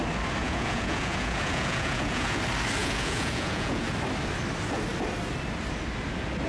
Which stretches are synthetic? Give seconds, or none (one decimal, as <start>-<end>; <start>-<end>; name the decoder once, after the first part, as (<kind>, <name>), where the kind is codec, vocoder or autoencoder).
0.4-2.4 (vocoder, Vocos); 2.8-3.9